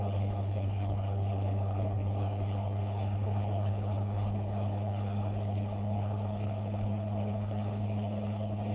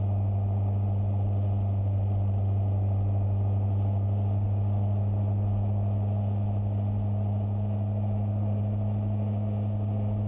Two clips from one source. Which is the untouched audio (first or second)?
second